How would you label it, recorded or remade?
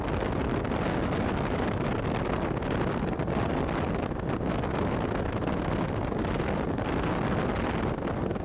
recorded